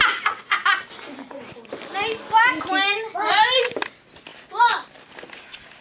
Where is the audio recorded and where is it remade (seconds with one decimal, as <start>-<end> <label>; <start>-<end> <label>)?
0.0-5.8 recorded